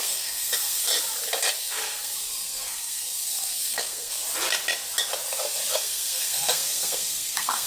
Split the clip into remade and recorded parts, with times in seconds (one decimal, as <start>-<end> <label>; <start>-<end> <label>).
0.0-0.9 remade; 0.9-1.6 recorded; 1.6-4.2 remade; 4.2-5.7 recorded; 5.7-7.7 remade